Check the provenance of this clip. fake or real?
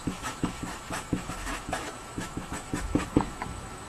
fake